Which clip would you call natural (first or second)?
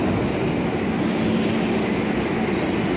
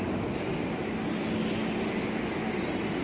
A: second